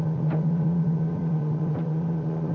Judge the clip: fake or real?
fake